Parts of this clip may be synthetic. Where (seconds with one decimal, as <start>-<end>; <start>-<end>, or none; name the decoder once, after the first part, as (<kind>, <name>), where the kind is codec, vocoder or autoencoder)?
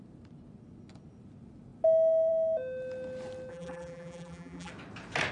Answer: 3.5-4.7 (vocoder, BigVGAN v2)